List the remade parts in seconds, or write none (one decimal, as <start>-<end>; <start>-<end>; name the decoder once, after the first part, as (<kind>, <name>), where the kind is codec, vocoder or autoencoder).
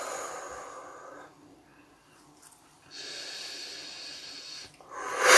none